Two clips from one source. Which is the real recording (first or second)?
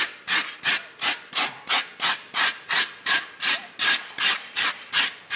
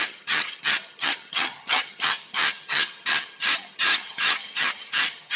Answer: first